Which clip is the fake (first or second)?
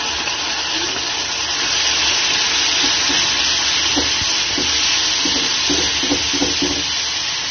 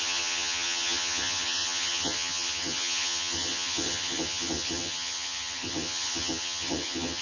second